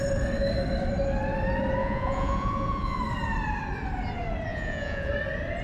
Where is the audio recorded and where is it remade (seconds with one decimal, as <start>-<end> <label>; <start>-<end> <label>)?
0.0-1.8 recorded; 1.8-3.0 remade; 3.0-4.5 recorded; 4.5-5.1 remade; 5.1-5.6 recorded